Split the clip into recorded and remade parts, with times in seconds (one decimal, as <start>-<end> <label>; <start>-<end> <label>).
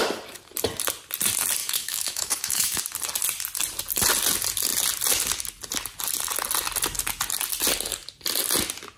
0.0-1.6 recorded; 1.6-2.8 remade; 2.8-9.0 recorded